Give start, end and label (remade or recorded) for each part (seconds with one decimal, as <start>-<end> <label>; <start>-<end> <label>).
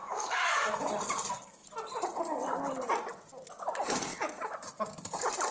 0.0-0.9 remade; 0.9-5.5 recorded